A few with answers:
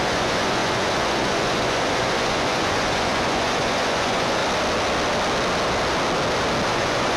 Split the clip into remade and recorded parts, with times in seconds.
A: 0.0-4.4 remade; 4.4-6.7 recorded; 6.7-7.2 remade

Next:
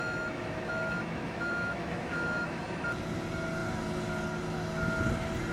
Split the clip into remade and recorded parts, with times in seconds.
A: 0.0-2.6 remade; 2.6-5.5 recorded

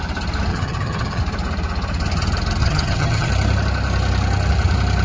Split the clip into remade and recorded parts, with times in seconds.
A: 0.0-0.5 recorded; 0.5-1.2 remade; 1.2-2.6 recorded; 2.6-3.3 remade; 3.3-5.0 recorded

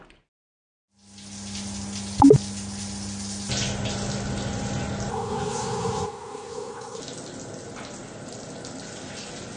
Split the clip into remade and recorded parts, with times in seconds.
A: 0.0-5.1 recorded; 5.1-7.0 remade; 7.0-9.6 recorded

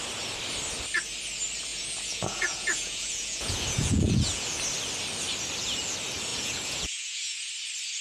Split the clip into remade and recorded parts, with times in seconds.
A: 0.0-1.7 recorded; 1.7-4.6 remade; 4.6-6.3 recorded; 6.3-7.5 remade; 7.5-8.0 recorded

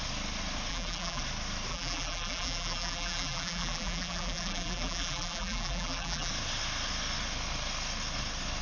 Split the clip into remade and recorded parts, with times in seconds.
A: 0.0-0.7 recorded; 0.7-1.2 remade; 1.2-1.7 recorded; 1.7-6.3 remade; 6.3-8.6 recorded